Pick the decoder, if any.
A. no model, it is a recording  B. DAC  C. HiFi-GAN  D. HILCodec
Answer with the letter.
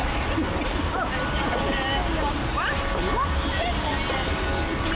A